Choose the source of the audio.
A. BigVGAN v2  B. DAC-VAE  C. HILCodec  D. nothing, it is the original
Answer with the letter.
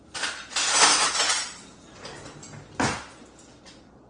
D